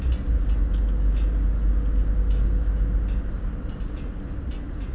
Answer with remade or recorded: recorded